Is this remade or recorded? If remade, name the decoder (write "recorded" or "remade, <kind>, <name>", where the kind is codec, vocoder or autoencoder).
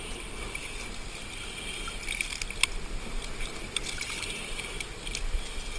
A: recorded